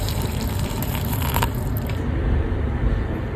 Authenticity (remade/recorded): remade